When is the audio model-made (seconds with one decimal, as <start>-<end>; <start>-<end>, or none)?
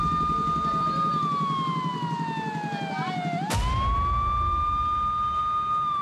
none